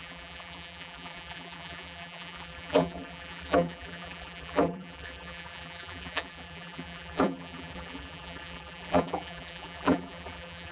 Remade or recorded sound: remade